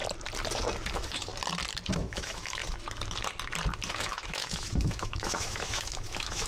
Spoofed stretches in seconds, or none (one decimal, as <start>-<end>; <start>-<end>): 0.9-1.3; 1.9-2.6; 3.9-6.5